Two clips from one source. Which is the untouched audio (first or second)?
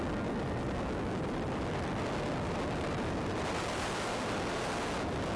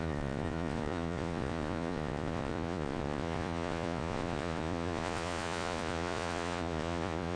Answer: first